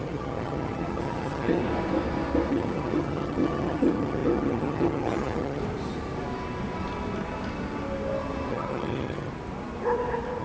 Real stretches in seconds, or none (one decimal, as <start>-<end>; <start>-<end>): 1.6-2.5; 5.6-8.5; 9.3-10.4